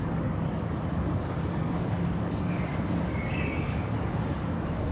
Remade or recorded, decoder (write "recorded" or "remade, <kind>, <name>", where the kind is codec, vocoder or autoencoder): remade, codec, DAC